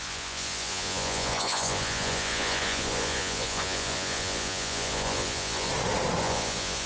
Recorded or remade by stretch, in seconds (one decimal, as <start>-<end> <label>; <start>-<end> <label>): 0.0-5.7 remade; 5.7-6.2 recorded; 6.2-6.9 remade